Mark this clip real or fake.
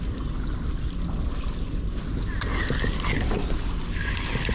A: real